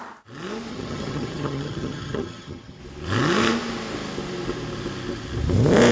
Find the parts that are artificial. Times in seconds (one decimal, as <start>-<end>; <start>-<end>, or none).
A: 0.7-2.8